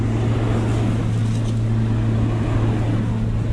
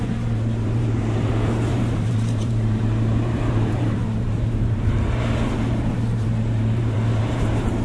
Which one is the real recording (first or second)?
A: first